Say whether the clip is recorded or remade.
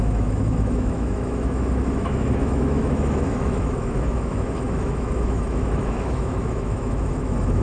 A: remade